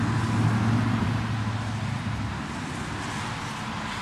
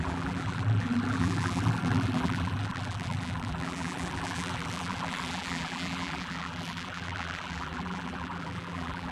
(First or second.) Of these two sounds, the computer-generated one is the second